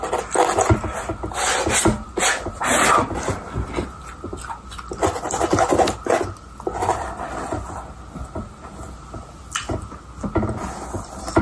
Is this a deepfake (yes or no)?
no